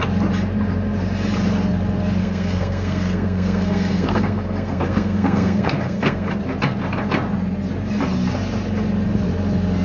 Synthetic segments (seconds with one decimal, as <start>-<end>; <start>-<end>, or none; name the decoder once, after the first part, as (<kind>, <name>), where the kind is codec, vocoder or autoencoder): 2.2-6.3 (codec, SNAC)